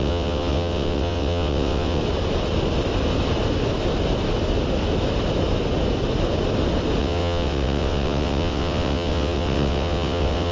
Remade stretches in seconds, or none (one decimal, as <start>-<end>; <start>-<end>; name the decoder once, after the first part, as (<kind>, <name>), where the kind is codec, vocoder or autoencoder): 0.0-2.0 (vocoder, WaveNeXt); 7.0-10.5